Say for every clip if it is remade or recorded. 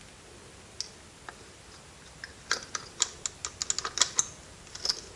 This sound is recorded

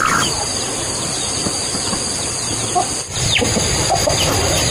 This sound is recorded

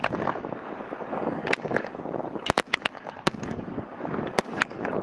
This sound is remade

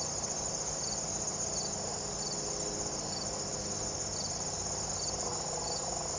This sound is recorded